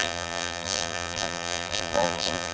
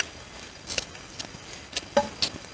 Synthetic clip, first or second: first